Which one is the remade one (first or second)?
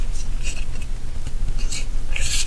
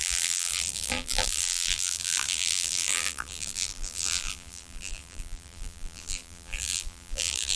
second